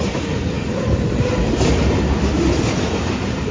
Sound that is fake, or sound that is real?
real